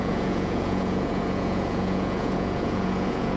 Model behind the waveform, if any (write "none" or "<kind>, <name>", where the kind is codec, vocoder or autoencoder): vocoder, Vocos